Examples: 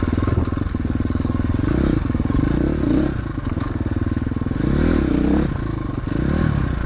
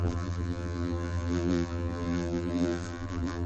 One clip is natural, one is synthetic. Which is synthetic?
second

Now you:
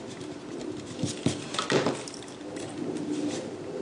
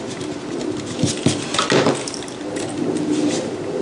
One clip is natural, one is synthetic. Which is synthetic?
first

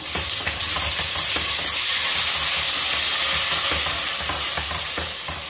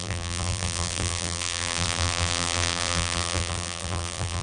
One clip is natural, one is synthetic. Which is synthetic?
second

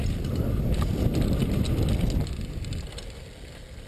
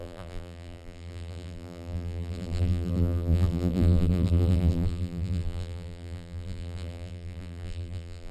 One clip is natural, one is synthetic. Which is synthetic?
second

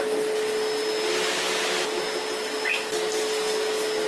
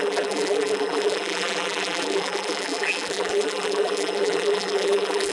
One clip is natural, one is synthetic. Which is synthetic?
second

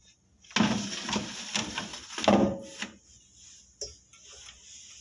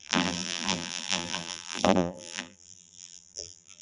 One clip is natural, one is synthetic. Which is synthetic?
second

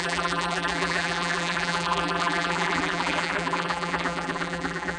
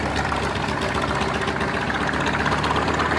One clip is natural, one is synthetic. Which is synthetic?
first